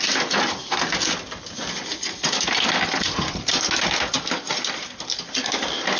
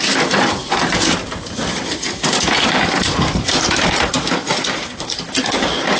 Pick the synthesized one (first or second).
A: second